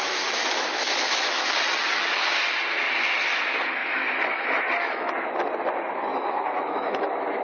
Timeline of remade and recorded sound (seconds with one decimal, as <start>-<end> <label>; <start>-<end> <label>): 0.0-1.5 remade; 1.5-3.8 recorded; 3.8-5.3 remade; 5.3-6.1 recorded; 6.1-7.4 remade